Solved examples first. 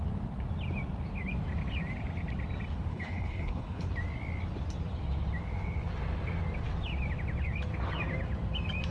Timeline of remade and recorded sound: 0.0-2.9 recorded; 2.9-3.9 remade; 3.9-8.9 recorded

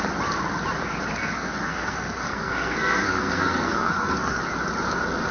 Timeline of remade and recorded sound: 0.0-1.2 recorded; 1.2-4.4 remade; 4.4-5.3 recorded

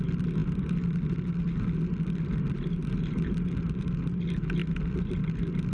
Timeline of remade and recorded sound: 0.0-5.7 recorded

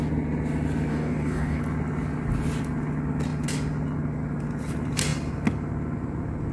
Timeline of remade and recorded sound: 0.0-0.9 recorded; 0.9-1.6 remade; 1.6-6.5 recorded

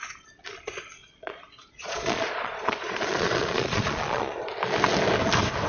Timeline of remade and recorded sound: 0.0-1.0 recorded; 1.0-4.4 remade; 4.4-5.7 recorded

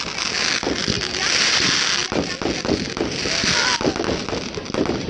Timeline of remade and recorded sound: 0.0-5.1 recorded